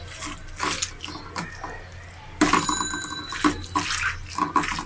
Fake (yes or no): no